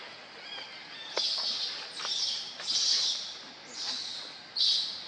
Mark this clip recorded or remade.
recorded